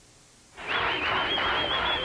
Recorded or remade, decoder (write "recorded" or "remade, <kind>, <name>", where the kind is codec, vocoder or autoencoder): recorded